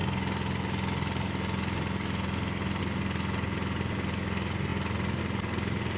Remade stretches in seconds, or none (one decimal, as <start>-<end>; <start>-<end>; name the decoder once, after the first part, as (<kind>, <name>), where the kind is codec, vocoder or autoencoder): none